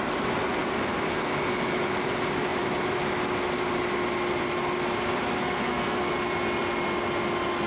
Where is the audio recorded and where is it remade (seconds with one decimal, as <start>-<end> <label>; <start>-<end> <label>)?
0.0-5.4 recorded; 5.4-6.1 remade; 6.1-7.7 recorded